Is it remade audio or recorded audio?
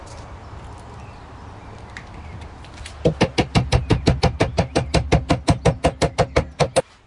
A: recorded